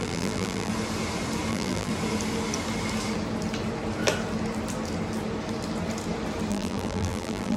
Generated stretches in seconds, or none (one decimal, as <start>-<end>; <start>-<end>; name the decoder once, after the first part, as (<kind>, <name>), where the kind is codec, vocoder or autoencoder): 0.0-0.7 (vocoder, BigVGAN v2); 1.5-1.9; 6.5-7.6